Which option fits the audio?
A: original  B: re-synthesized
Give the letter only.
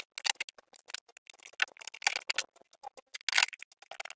A